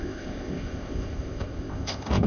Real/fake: fake